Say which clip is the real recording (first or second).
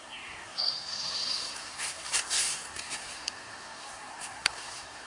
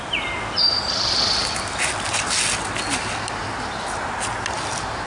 second